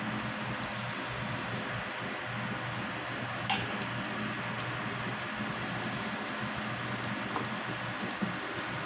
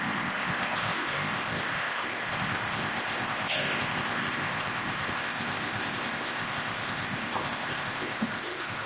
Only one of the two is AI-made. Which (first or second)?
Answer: second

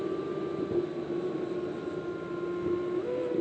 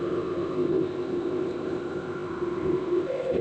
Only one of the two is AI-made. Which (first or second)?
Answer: second